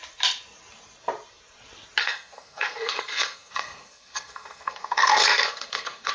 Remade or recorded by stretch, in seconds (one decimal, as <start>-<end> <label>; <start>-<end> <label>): 0.0-2.0 recorded; 2.0-6.1 remade